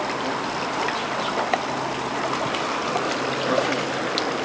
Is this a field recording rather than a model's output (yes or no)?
yes